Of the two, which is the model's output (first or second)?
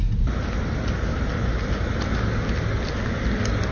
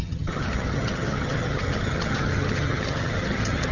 second